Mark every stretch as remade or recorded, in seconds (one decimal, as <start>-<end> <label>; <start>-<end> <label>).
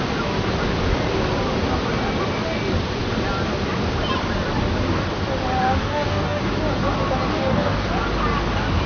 0.0-5.8 recorded; 5.8-6.4 remade; 6.4-7.3 recorded; 7.3-7.9 remade; 7.9-8.9 recorded